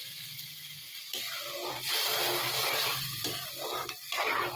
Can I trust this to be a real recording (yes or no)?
yes